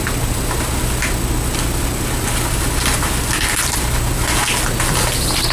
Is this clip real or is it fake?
real